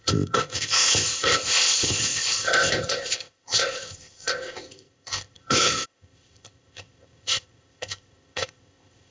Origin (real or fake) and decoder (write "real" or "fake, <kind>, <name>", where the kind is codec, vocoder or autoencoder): fake, codec, ZipCodec